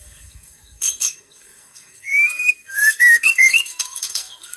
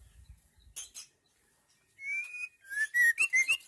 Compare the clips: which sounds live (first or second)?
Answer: second